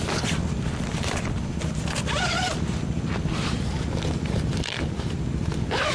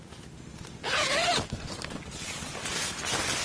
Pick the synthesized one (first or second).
first